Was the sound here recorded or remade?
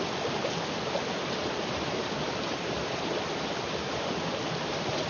recorded